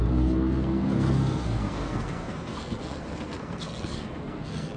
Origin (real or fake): fake